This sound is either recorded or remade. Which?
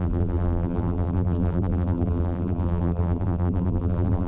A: remade